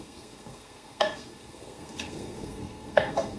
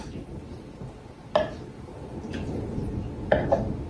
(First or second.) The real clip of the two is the second